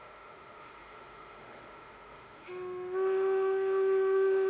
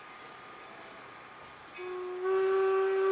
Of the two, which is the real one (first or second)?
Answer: second